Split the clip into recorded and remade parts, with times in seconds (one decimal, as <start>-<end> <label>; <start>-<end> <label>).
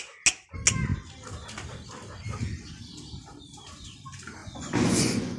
0.0-4.4 recorded; 4.4-5.4 remade